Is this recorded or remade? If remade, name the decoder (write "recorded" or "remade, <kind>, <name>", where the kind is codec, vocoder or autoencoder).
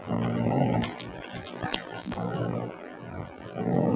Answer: remade, vocoder, BigVGAN v2